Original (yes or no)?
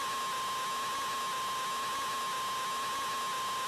yes